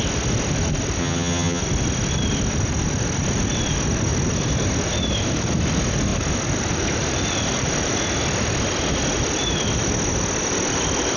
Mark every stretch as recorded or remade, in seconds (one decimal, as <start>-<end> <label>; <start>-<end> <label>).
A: 0.0-1.0 recorded; 1.0-1.6 remade; 1.6-11.2 recorded